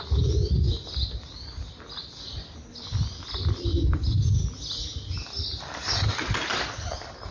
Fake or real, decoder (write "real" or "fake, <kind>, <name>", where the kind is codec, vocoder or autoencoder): real